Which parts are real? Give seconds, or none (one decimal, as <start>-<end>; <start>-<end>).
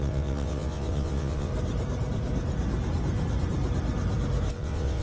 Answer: 1.5-4.5